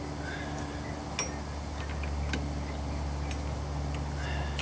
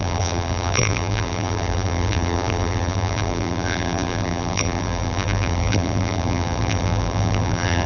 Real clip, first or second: first